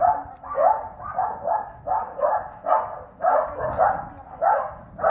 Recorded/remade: recorded